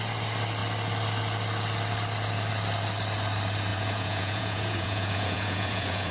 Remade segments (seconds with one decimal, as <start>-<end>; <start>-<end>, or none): 3.7-6.1